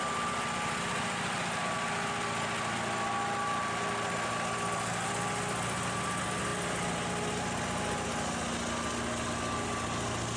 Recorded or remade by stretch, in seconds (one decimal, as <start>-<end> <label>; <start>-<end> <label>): 0.0-10.4 recorded